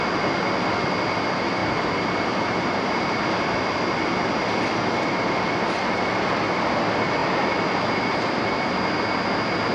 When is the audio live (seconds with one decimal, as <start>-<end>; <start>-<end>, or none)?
0.0-1.6; 2.9-9.7